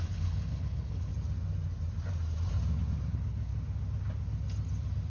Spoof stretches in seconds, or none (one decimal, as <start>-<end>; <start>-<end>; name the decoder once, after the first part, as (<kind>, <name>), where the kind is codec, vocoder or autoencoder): 0.0-1.1 (codec, HILCodec); 3.1-3.5